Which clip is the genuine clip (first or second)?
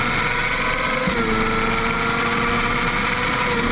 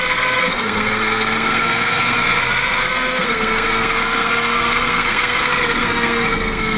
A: first